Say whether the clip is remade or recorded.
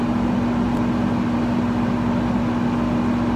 recorded